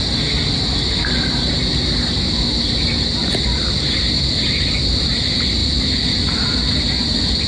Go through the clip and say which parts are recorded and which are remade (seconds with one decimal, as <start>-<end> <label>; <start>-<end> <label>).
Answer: 0.0-7.5 recorded